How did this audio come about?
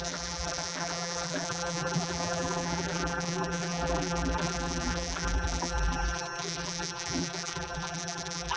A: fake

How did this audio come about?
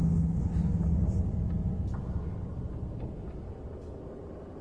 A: real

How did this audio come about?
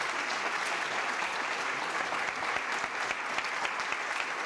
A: real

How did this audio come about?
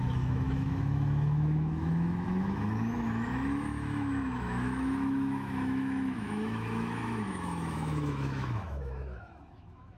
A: fake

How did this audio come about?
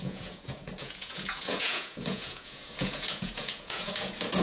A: fake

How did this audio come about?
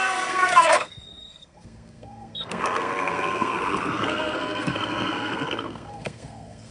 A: fake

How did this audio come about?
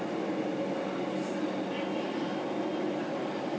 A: real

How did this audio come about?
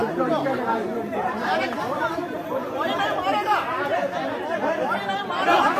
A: fake